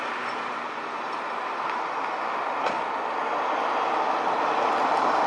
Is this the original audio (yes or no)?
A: yes